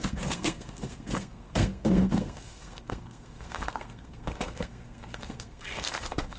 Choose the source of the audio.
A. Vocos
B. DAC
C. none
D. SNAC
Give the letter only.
D